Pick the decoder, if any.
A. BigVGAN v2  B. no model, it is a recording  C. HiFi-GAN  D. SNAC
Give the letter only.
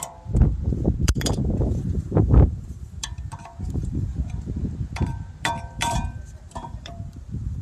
A